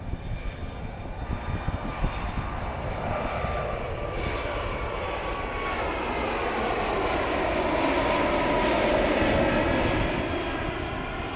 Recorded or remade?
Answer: recorded